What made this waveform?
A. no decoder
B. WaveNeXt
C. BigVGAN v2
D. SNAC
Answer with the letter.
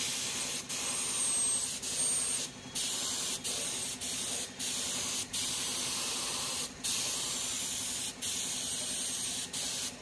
A